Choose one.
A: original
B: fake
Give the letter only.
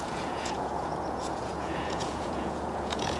B